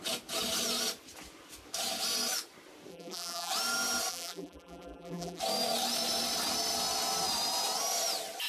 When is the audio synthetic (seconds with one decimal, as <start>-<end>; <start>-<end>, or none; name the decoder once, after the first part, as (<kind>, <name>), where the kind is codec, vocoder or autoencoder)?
2.9-3.5 (vocoder, BigVGAN v2); 4.1-5.4